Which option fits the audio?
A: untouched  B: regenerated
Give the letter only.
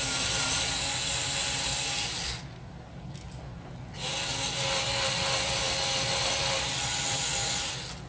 A